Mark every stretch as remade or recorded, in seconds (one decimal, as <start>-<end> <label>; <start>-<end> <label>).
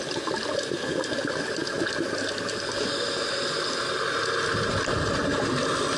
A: 0.0-6.0 recorded